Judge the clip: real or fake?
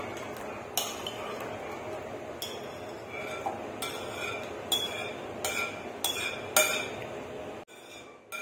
real